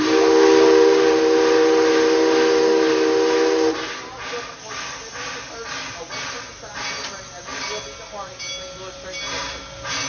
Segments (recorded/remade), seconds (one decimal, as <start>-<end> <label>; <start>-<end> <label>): 0.0-10.1 recorded